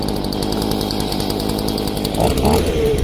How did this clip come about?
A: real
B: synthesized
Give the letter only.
A